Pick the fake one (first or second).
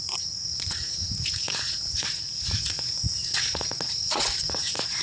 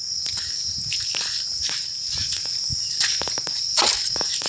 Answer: first